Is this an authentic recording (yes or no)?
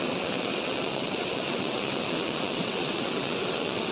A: no